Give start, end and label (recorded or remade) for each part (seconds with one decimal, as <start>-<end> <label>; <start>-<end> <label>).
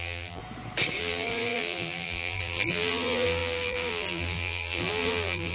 0.0-0.4 remade; 0.4-1.0 recorded; 1.0-5.5 remade